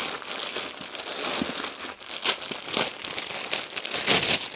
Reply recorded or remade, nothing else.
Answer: recorded